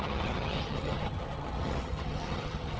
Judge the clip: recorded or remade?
remade